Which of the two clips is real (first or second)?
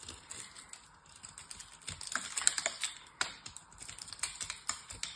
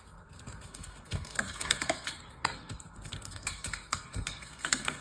first